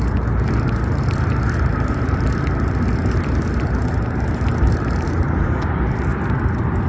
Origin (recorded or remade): recorded